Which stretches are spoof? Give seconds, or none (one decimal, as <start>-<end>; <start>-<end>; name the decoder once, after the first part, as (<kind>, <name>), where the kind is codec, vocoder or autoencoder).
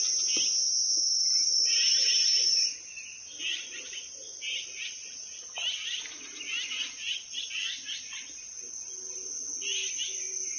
none